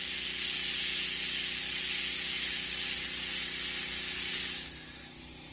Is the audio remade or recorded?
recorded